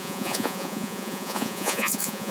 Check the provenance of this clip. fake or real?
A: fake